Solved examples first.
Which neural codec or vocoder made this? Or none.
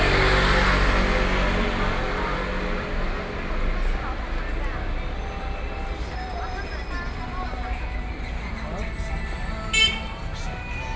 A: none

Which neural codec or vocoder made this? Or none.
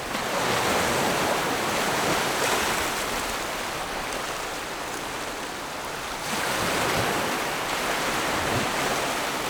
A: none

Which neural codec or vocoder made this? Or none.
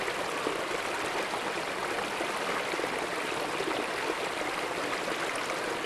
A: none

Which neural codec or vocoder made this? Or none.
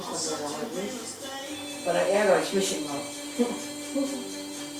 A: none